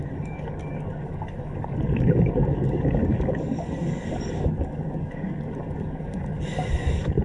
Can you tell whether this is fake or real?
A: fake